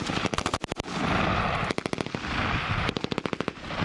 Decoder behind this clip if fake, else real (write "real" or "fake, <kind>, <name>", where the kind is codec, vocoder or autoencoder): real